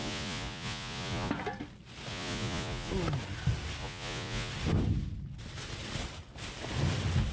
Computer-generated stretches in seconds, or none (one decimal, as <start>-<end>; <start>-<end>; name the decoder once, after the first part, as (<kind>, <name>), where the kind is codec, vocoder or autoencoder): 0.0-1.3 (vocoder, Vocos); 2.1-2.9; 3.8-4.5

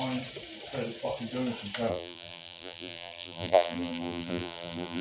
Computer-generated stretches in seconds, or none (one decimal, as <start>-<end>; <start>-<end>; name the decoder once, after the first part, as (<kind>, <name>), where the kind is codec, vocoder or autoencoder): 1.9-5.0 (vocoder, BigVGAN v2)

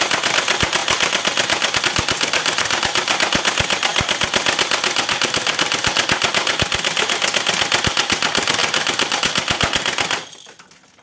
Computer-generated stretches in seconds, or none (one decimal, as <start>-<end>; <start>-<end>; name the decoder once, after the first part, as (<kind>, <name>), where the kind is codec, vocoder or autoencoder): 8.6-9.2 (vocoder, BigVGAN v2)

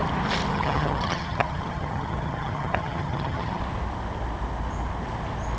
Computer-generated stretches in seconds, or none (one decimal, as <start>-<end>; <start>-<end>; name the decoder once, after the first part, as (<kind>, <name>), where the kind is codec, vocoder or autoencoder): 0.5-3.6 (vocoder, HiFi-GAN)

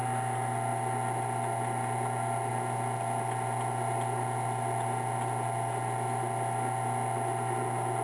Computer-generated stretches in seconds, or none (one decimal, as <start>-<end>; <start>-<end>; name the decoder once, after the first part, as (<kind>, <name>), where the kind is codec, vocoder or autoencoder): none

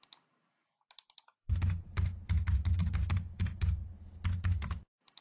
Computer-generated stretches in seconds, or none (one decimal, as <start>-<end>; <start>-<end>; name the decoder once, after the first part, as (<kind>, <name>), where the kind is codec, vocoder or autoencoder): none